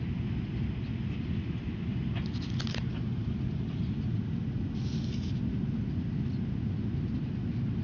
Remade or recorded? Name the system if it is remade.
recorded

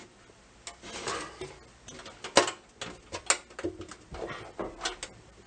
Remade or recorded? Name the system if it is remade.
recorded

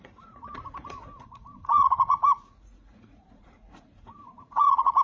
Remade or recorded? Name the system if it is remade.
remade, vocoder, Vocos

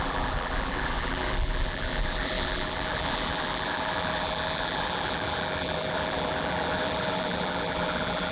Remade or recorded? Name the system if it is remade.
remade, vocoder, BigVGAN v2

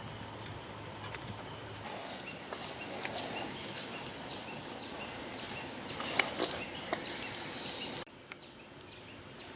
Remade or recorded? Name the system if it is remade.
recorded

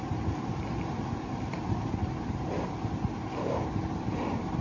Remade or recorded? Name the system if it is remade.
recorded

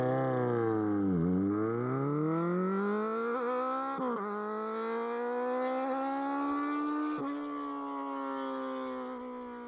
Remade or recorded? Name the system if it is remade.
recorded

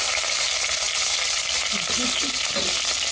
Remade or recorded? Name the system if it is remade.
recorded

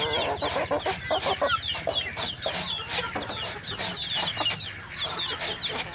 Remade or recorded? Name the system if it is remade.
recorded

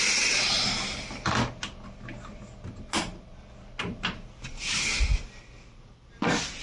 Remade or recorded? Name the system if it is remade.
recorded